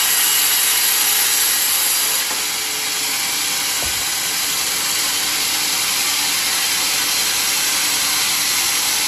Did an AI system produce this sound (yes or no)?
no